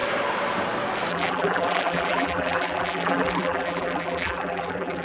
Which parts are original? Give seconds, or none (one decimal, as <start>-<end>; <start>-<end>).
0.0-1.1